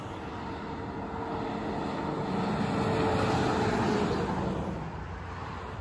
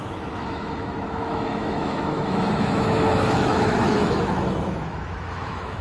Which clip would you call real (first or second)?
first